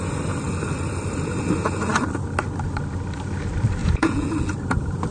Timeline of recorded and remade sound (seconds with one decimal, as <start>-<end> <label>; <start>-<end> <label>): 0.0-3.8 recorded; 3.8-4.3 remade; 4.3-5.1 recorded